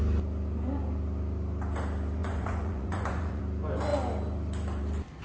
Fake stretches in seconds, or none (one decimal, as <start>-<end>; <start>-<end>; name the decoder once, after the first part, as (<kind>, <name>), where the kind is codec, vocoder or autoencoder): 2.2-3.4 (vocoder, Vocos)